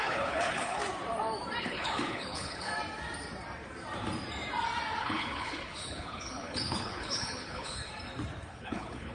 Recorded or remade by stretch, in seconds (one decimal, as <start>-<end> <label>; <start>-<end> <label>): 0.0-0.8 remade; 0.8-1.6 recorded; 1.6-2.7 remade; 2.7-5.0 recorded; 5.0-7.9 remade; 7.9-8.5 recorded; 8.5-9.1 remade